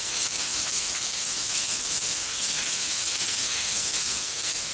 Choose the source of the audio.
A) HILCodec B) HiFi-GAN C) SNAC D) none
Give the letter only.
C